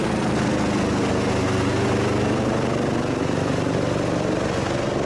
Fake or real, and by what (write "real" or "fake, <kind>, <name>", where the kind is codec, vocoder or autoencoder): real